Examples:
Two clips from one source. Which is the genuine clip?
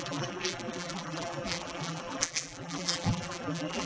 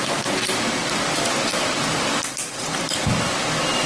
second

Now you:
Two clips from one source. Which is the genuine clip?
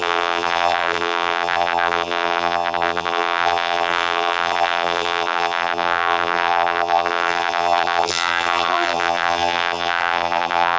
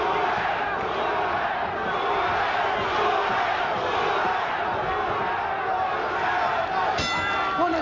second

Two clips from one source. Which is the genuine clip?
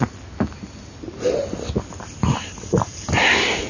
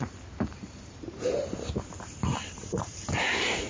first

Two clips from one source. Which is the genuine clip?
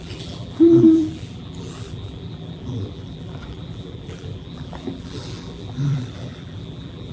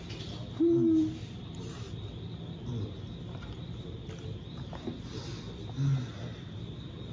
second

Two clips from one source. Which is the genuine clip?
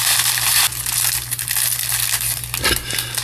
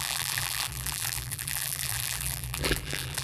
first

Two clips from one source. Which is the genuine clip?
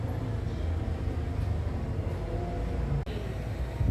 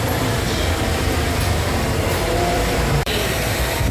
first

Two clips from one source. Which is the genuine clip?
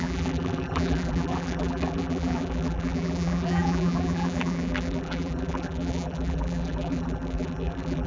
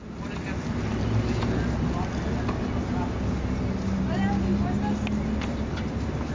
second